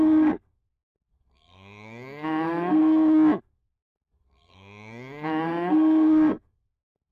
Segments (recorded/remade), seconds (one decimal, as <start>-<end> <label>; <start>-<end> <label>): 0.0-2.8 remade; 2.8-3.4 recorded; 3.4-7.1 remade